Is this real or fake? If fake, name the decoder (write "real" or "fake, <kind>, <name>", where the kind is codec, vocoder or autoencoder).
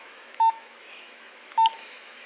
fake, autoencoder, DAC-VAE